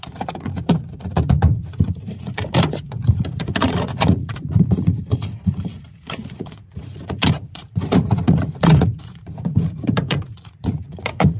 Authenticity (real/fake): fake